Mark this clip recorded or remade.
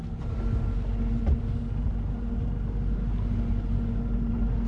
recorded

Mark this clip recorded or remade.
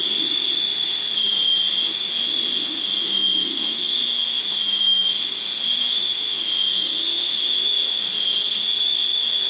remade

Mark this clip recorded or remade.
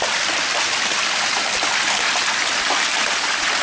recorded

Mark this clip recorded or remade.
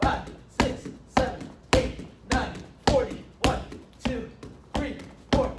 recorded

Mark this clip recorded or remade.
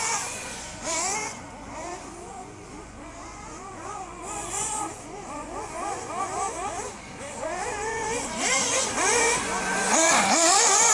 remade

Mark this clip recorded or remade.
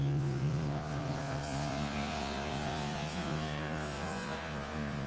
remade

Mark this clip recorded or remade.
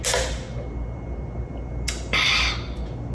recorded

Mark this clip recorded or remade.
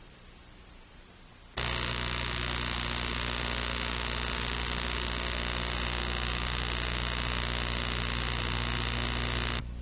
recorded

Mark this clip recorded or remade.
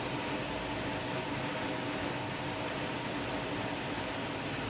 recorded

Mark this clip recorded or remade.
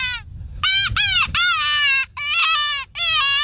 recorded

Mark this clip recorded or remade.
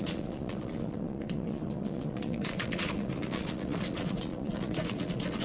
remade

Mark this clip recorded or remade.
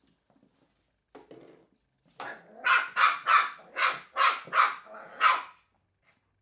recorded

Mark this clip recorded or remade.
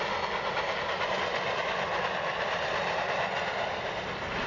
recorded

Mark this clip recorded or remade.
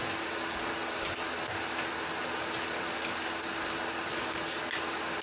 recorded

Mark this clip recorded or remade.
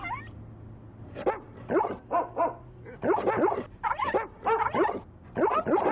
recorded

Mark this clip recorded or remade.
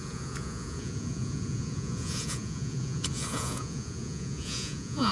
remade